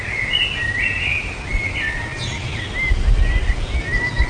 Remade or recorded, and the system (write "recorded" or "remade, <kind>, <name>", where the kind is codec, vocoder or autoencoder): recorded